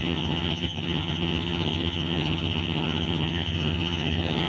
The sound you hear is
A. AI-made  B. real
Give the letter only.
A